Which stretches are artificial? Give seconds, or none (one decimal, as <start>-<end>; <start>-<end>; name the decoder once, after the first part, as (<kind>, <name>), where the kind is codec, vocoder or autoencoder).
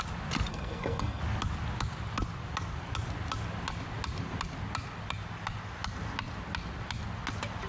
0.5-1.2 (codec, SNAC)